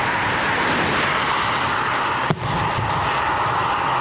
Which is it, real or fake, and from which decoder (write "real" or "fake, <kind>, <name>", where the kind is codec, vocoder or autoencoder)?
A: real